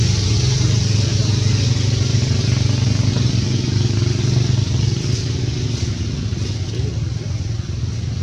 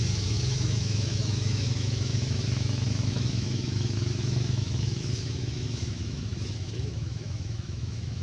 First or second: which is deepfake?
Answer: second